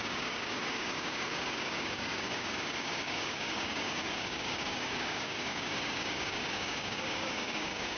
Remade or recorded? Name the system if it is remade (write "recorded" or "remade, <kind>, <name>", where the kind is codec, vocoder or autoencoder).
remade, codec, DAC